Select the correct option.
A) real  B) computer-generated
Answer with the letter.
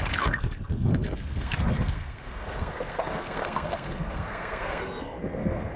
B